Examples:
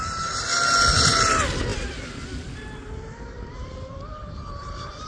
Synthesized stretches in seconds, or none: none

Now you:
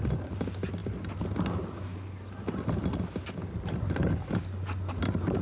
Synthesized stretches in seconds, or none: none

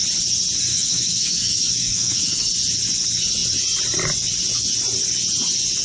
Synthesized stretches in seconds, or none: 0.7-2.5 (autoencoder, DAC-VAE)